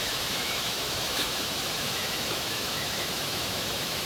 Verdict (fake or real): fake